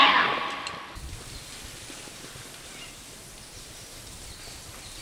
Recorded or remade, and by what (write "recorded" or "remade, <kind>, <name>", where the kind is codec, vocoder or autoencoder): remade, vocoder, BigVGAN v2